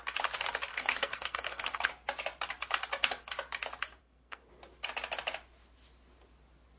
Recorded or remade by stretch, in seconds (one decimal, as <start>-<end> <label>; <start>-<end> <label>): 0.0-0.7 recorded; 0.7-1.9 remade; 1.9-4.0 recorded; 4.0-4.5 remade; 4.5-6.8 recorded